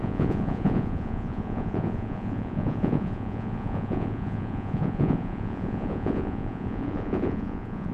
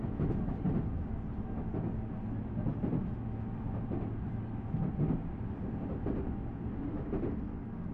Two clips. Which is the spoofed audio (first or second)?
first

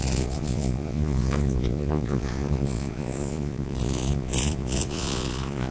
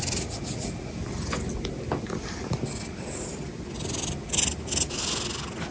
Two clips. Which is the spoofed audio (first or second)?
first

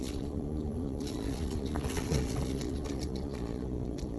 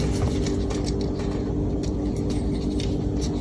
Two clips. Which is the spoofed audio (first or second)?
first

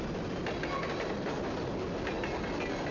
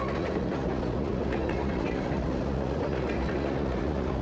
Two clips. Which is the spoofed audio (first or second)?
second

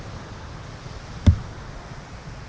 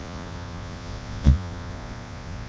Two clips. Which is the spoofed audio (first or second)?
second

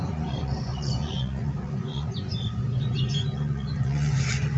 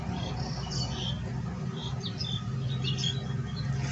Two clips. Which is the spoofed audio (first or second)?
first